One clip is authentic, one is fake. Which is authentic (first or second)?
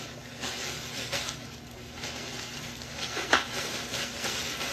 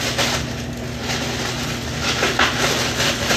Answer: second